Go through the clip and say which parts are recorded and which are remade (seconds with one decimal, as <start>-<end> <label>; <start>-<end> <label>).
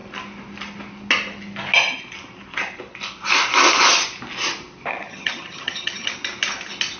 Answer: 0.0-4.9 recorded; 4.9-6.1 remade; 6.1-7.0 recorded